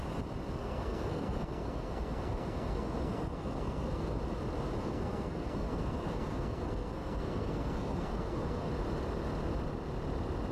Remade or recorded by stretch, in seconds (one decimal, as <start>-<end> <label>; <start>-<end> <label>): 0.0-0.6 recorded; 0.6-4.2 remade; 4.2-4.8 recorded; 4.8-8.7 remade; 8.7-10.5 recorded